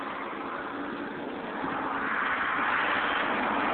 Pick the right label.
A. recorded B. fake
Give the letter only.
A